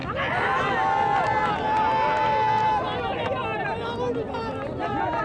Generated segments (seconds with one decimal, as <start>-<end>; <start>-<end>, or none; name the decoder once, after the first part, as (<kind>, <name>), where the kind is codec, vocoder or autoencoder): none